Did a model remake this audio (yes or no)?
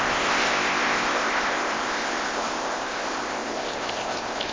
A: yes